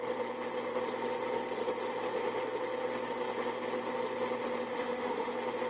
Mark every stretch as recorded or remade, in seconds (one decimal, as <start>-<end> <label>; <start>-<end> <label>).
0.0-4.7 recorded; 4.7-5.3 remade; 5.3-5.7 recorded